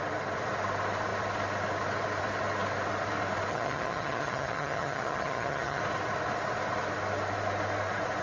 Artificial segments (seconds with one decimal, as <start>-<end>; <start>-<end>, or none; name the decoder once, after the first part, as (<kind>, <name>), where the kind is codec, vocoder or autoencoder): 3.5-5.8 (vocoder, HiFi-GAN)